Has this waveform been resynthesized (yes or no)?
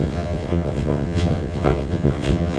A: yes